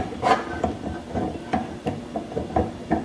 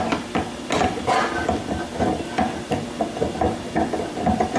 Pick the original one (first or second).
second